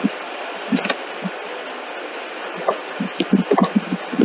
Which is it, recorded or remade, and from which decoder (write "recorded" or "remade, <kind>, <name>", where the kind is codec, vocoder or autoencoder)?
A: recorded